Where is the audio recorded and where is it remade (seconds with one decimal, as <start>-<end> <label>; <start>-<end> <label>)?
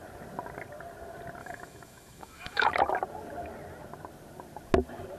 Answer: 0.0-1.4 recorded; 1.4-2.7 remade; 2.7-5.2 recorded